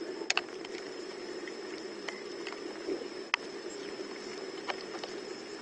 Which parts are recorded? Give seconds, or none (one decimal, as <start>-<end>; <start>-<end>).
0.0-5.6